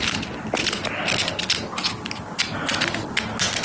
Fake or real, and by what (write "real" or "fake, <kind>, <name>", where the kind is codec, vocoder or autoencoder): real